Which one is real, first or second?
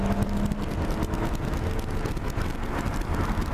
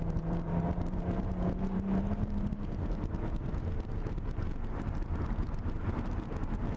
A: first